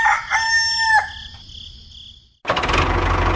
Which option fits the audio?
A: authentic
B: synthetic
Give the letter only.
A